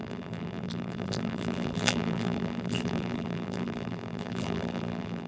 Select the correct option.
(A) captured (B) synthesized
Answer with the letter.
B